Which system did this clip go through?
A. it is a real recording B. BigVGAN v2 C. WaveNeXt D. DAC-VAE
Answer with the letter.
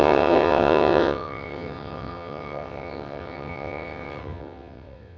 C